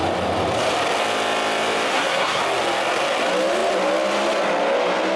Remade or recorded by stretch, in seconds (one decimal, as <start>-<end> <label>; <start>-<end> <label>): 0.0-1.9 recorded; 1.9-2.4 remade; 2.4-5.2 recorded